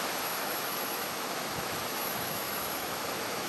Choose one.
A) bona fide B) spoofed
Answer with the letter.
B